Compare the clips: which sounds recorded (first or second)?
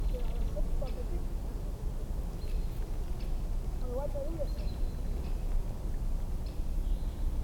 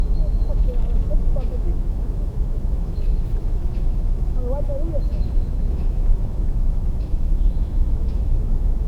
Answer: first